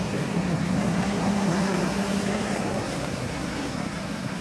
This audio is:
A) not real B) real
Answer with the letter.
A